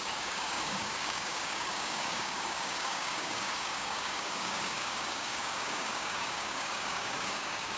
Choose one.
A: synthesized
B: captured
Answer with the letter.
A